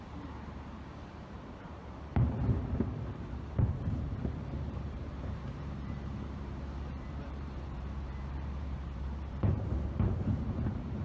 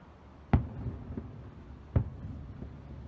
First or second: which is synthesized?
first